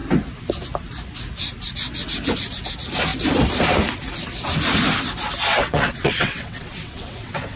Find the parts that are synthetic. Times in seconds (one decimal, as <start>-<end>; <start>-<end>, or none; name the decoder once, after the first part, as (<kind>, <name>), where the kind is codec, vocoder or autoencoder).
5.5-7.6 (vocoder, WaveNeXt)